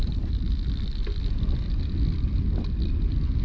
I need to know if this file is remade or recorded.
recorded